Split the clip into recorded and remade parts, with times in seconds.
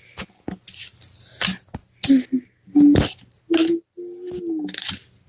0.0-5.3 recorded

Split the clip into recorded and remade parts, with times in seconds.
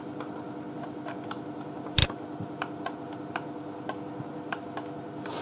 0.0-5.4 remade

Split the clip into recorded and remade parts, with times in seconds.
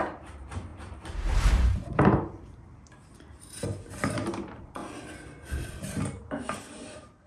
0.0-4.8 remade; 4.8-5.8 recorded; 5.8-7.3 remade